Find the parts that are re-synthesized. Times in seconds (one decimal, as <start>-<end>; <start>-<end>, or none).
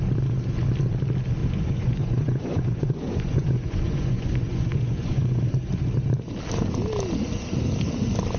1.4-5.4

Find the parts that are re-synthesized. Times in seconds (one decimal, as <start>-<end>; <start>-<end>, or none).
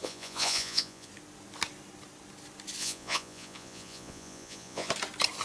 0.0-1.1; 2.8-4.9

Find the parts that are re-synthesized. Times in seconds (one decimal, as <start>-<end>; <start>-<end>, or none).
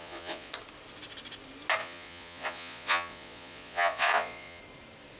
0.0-0.5; 1.8-4.6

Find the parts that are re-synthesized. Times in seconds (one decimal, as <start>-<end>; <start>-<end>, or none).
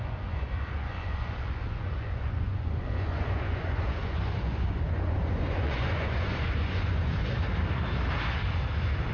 0.0-7.2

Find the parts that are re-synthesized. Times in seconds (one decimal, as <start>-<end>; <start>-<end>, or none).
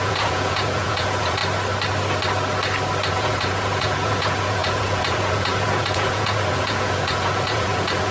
0.0-1.4; 3.1-8.1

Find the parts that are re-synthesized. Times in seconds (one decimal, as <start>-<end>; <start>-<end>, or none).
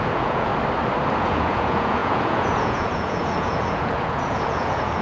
0.0-0.5; 1.2-5.0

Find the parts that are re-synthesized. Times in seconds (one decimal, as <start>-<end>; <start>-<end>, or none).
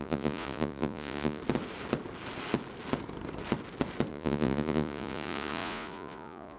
0.0-1.4; 4.1-6.6